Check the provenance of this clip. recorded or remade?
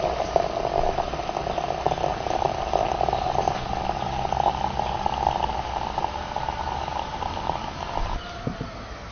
recorded